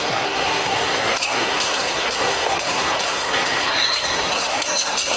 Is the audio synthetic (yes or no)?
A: yes